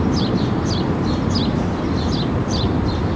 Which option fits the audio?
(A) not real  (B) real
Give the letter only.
B